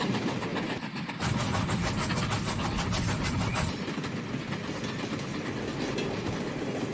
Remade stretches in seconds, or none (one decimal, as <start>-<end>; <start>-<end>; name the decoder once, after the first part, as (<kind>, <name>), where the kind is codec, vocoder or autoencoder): none